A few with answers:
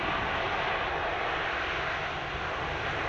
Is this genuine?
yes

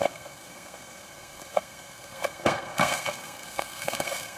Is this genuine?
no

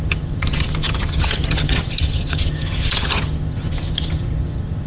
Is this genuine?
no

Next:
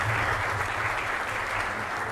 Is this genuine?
yes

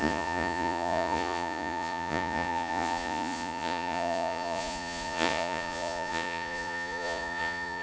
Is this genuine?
no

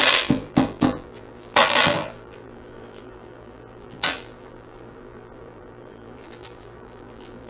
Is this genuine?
no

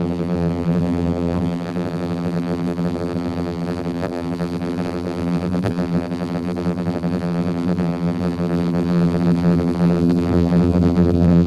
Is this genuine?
no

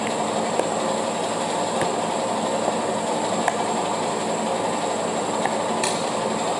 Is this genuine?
yes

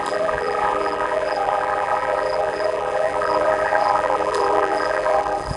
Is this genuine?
no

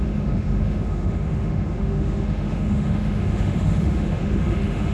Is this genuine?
no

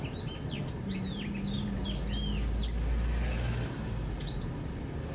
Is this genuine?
yes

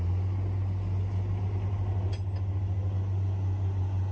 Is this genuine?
yes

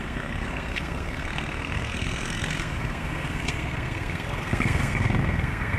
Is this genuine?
no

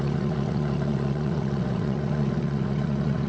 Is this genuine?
no